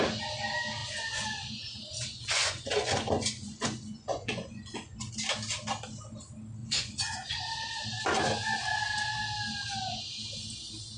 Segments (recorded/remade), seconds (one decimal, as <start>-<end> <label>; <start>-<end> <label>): 0.0-0.8 recorded; 0.8-5.1 remade; 5.1-6.6 recorded; 6.6-7.4 remade; 7.4-11.0 recorded